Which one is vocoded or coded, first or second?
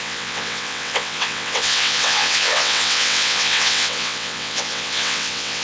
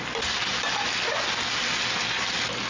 first